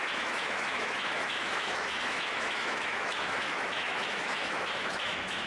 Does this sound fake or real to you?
fake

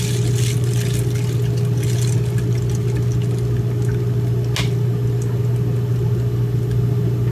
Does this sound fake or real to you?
real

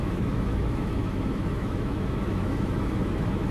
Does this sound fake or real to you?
fake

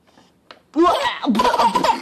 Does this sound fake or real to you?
real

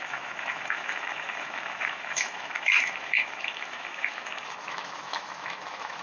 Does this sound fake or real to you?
fake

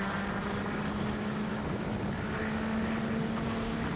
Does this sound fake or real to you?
real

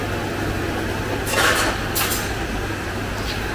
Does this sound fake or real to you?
real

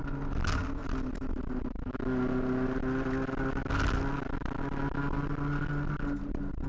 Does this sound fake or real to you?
real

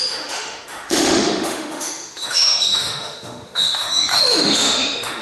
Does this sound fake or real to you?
fake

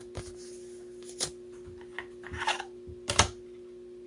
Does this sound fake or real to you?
real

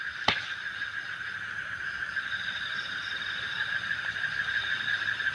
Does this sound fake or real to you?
real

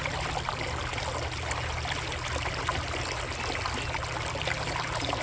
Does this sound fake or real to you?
real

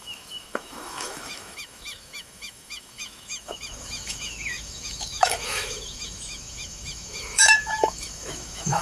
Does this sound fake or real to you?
fake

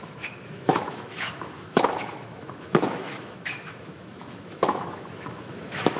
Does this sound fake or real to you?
fake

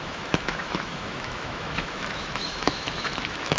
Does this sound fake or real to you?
fake